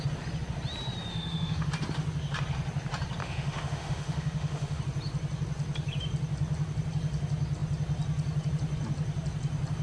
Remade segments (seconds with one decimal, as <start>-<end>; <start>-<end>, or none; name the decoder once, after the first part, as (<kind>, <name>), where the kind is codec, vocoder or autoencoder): 1.1-1.7 (autoencoder, DAC-VAE); 3.2-4.8

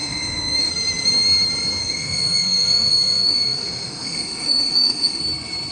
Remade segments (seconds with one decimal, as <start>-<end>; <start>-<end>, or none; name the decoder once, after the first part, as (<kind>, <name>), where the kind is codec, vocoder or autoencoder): 0.0-0.7 (autoencoder, DAC-VAE); 1.8-5.2